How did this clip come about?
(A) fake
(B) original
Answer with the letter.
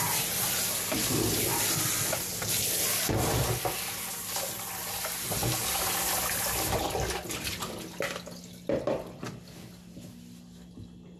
B